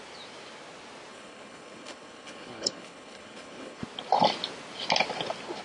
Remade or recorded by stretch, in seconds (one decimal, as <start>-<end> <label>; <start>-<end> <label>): 0.0-1.1 recorded; 1.1-3.8 remade; 3.8-5.6 recorded